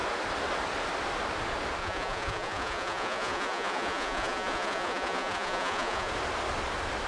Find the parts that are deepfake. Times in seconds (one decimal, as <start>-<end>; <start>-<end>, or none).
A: 1.8-6.1